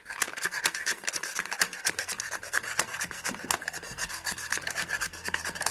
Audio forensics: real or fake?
fake